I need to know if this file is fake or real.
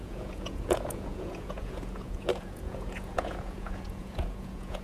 fake